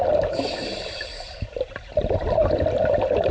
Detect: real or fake fake